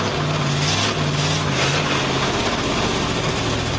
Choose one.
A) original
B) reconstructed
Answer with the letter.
A